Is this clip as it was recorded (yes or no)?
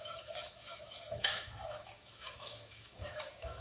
no